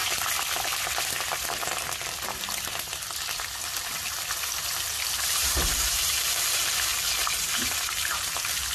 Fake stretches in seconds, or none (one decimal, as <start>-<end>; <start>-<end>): 5.2-6.9; 7.4-8.7

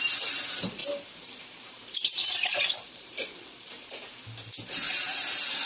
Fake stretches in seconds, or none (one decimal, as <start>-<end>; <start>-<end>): 0.8-4.2

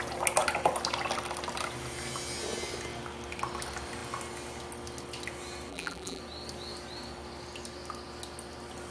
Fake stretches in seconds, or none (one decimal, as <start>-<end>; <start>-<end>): 5.7-6.2

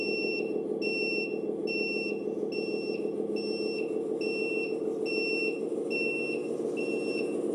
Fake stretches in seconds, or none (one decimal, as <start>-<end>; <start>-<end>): none

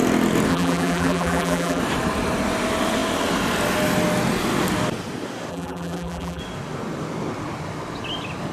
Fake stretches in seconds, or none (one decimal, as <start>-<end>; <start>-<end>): 0.5-1.8; 5.5-6.4

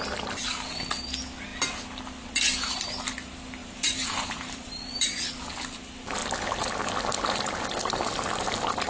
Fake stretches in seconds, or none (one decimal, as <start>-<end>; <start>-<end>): 3.6-5.4

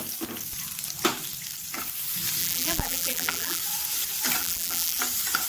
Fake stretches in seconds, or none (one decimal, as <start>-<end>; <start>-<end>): 2.4-3.6; 4.4-5.0

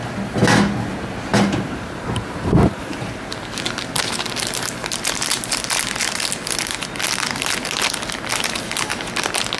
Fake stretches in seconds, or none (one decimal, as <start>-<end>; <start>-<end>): 1.3-2.9